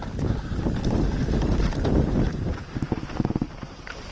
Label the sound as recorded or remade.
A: recorded